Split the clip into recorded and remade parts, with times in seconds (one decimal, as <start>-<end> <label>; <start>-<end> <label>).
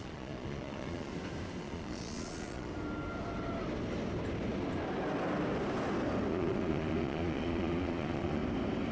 0.0-1.1 remade; 1.1-1.6 recorded; 1.6-2.7 remade; 2.7-6.3 recorded; 6.3-8.4 remade; 8.4-8.9 recorded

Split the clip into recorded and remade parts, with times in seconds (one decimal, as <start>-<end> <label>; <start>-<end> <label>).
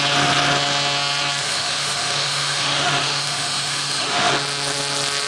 0.0-1.4 recorded; 1.4-4.3 remade; 4.3-5.3 recorded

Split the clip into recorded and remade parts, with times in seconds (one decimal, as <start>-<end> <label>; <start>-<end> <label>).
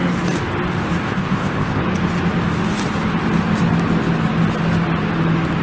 0.0-1.0 recorded; 1.0-1.8 remade; 1.8-5.6 recorded